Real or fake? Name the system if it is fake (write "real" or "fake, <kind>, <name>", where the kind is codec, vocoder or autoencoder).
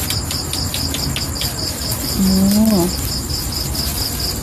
real